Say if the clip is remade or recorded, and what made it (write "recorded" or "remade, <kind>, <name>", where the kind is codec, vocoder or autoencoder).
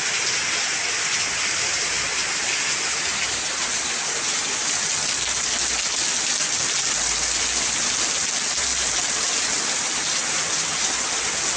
recorded